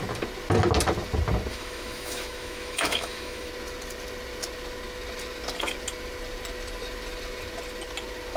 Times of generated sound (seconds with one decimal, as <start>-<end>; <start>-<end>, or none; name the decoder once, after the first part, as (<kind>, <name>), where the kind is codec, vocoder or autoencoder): 1.5-3.5 (autoencoder, DAC-VAE)